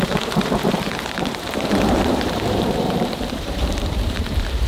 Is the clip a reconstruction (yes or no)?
yes